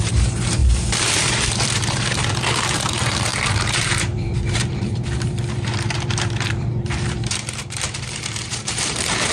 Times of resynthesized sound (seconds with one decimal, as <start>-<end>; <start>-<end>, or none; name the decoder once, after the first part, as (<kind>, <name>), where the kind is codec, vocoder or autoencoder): 0.0-0.6 (vocoder, BigVGAN v2); 1.2-9.3